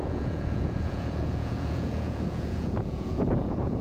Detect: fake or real fake